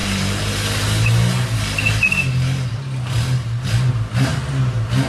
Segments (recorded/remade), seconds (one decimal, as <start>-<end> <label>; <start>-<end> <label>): 0.0-5.1 recorded